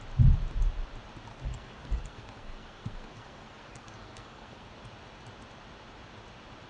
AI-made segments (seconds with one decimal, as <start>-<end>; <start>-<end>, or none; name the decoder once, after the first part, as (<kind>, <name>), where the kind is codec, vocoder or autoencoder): 1.3-4.7 (codec, SNAC)